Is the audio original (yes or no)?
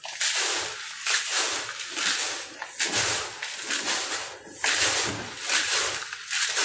yes